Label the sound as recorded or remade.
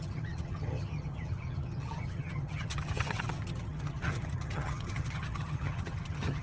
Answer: remade